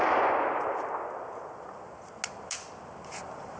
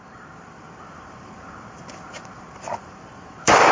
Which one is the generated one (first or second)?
second